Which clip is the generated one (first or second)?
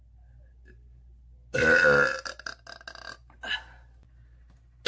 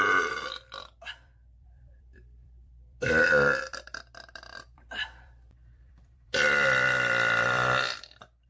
second